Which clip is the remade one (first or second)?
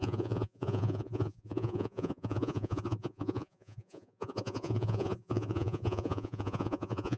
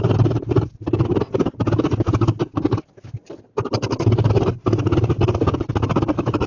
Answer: first